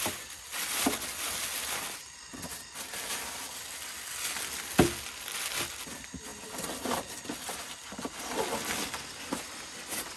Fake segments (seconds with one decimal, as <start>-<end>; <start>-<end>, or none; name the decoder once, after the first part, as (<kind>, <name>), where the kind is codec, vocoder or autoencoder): none